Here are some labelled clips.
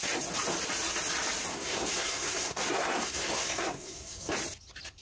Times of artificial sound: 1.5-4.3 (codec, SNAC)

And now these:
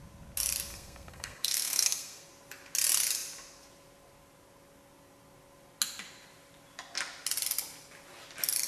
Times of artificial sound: 0.7-2.3 (codec, SNAC)

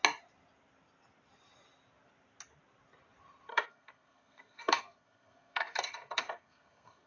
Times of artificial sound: 3.5-7.1 (codec, SNAC)

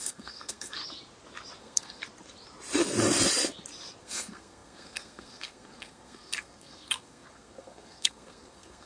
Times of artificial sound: 0.0-0.8 (codec, SNAC); 1.6-2.0; 4.0-8.9